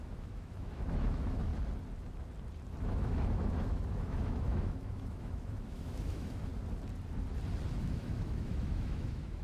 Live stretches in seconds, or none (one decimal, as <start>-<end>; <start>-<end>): 1.5-2.8; 6.5-7.8